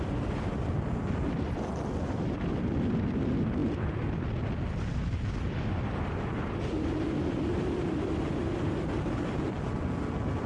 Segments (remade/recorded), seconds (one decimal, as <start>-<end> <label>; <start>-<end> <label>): 0.0-10.5 recorded

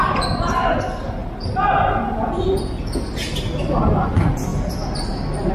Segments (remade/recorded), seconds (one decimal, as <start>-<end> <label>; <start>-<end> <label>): 0.0-1.2 remade; 1.2-4.1 recorded; 4.1-4.5 remade; 4.5-5.5 recorded

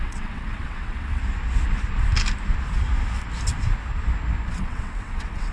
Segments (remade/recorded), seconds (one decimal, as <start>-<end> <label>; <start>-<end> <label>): 0.0-1.2 remade; 1.2-4.5 recorded; 4.5-5.5 remade

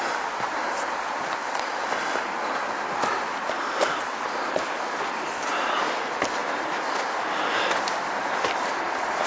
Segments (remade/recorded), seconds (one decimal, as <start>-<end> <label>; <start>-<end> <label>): 0.0-6.4 remade; 6.4-7.5 recorded; 7.5-9.3 remade

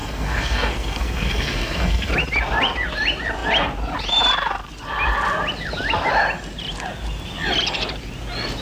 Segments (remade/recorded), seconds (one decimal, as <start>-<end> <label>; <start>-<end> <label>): 0.0-2.1 remade; 2.1-8.6 recorded

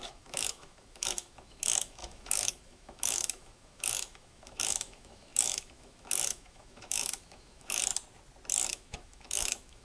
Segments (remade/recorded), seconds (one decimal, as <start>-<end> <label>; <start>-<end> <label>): 0.0-7.8 remade; 7.8-8.7 recorded; 8.7-9.8 remade